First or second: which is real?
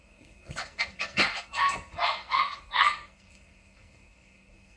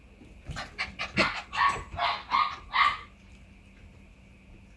second